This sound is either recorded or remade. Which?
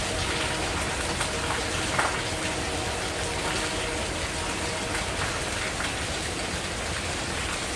recorded